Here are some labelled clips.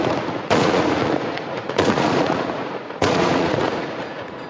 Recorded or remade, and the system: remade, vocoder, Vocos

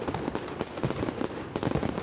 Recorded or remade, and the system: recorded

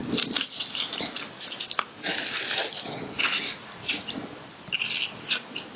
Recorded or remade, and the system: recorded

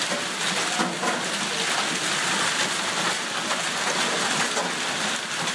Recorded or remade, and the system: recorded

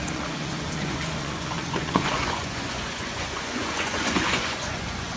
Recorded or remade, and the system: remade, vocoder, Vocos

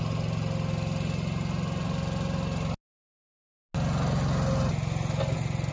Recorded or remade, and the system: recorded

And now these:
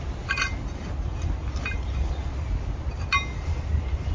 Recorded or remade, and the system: recorded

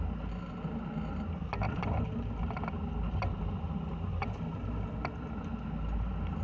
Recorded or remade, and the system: recorded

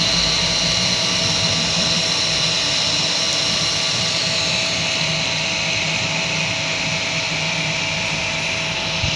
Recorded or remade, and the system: recorded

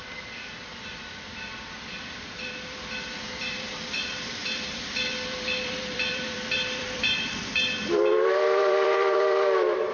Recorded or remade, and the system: remade, vocoder, BigVGAN v2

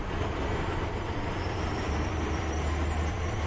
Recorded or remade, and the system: recorded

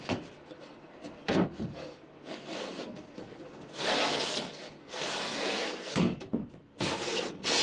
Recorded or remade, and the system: remade, codec, SNAC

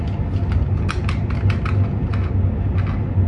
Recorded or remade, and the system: recorded